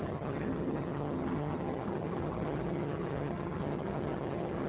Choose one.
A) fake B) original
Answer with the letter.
A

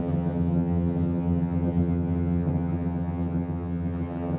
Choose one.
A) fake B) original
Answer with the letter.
A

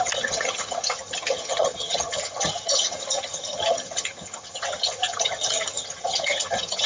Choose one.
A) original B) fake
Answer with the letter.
B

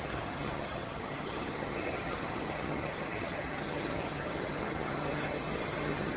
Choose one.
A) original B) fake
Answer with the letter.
B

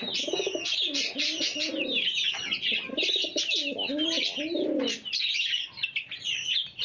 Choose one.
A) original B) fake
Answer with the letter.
A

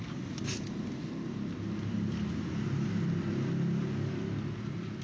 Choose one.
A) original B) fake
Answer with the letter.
A